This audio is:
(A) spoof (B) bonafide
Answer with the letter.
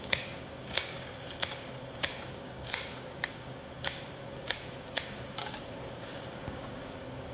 A